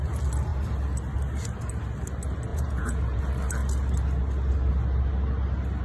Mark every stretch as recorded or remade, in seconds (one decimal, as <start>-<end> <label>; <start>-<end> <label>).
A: 0.0-2.5 recorded; 2.5-3.2 remade; 3.2-5.8 recorded

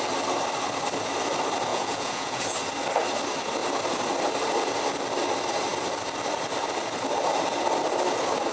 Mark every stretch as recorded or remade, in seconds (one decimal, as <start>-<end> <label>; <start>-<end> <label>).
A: 0.0-1.7 recorded; 1.7-2.4 remade; 2.4-8.5 recorded

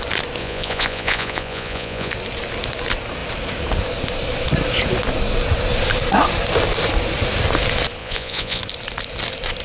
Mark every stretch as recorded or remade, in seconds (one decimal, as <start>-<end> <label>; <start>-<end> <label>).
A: 0.0-0.4 recorded; 0.4-2.1 remade; 2.1-8.0 recorded; 8.0-8.6 remade; 8.6-9.6 recorded

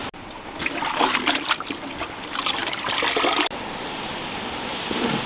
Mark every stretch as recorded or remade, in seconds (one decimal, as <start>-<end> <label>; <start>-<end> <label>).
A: 0.0-5.3 recorded

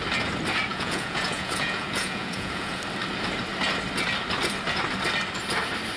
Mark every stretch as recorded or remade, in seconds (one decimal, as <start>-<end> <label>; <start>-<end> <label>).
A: 0.0-0.7 recorded; 0.7-2.8 remade; 2.8-6.0 recorded

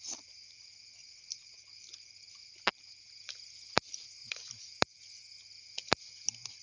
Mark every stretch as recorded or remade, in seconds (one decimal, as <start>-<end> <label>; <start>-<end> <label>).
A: 0.0-1.0 recorded; 1.0-1.5 remade; 1.5-6.6 recorded

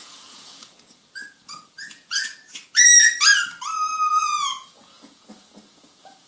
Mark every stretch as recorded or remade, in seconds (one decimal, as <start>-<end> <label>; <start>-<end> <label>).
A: 0.0-2.2 remade; 2.2-4.1 recorded; 4.1-6.3 remade

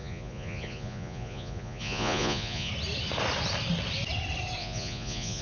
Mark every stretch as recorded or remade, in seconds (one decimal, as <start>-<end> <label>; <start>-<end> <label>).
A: 0.0-2.7 remade; 2.7-4.6 recorded; 4.6-5.4 remade